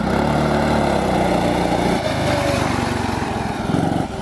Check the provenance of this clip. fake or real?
real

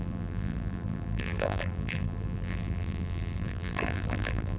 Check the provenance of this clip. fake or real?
fake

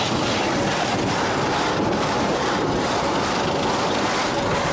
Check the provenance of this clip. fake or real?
fake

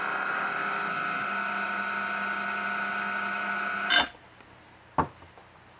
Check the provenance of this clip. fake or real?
real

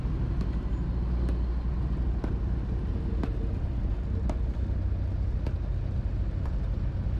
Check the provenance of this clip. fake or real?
real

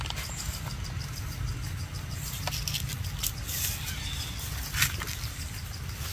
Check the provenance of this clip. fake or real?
real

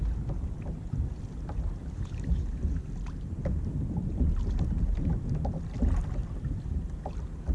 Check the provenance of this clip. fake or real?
real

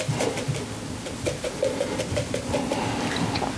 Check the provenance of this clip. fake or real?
real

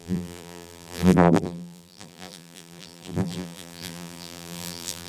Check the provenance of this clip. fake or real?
fake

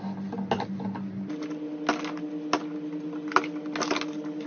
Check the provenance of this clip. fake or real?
real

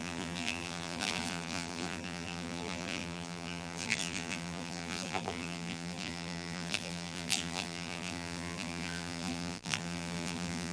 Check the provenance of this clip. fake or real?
fake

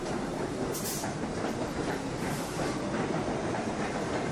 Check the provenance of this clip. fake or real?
fake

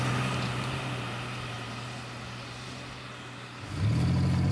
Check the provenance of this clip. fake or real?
real